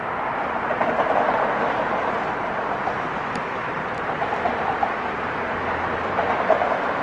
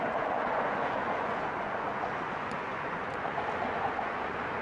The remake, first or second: second